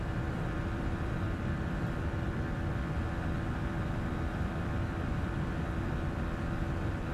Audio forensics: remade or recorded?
remade